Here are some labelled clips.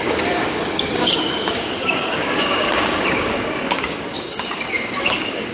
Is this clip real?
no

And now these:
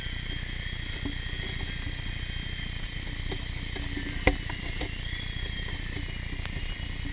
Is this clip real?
yes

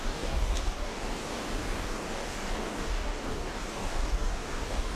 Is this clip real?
no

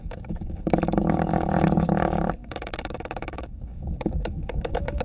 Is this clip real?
no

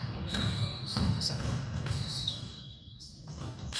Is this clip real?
no